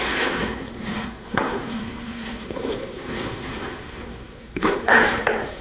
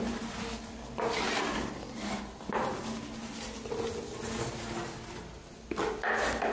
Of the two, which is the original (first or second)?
second